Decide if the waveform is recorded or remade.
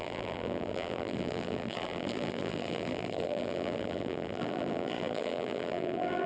remade